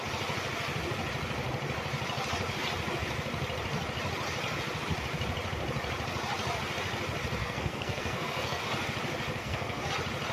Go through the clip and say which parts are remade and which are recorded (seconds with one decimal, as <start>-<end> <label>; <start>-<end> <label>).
0.0-7.4 recorded; 7.4-8.6 remade; 8.6-9.4 recorded; 9.4-9.9 remade; 9.9-10.3 recorded